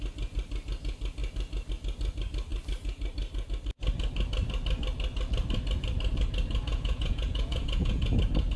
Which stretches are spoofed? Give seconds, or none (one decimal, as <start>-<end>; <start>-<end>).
6.7-8.2